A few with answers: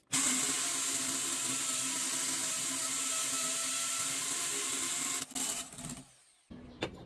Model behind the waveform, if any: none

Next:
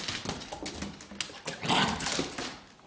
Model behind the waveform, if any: none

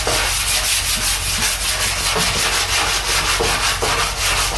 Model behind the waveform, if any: none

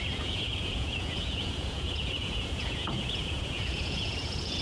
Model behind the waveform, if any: vocoder, Vocos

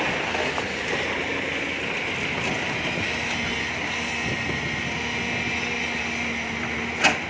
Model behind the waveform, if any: none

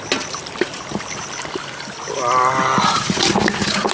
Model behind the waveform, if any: none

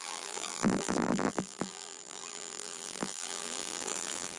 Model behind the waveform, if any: vocoder, BigVGAN v2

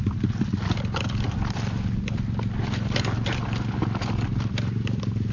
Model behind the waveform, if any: none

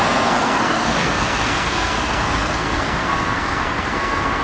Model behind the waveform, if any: codec, SNAC